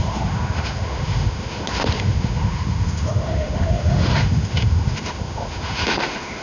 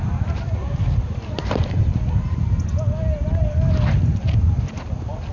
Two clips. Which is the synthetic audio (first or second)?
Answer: first